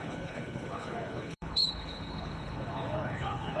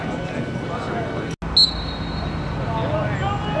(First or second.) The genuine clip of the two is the second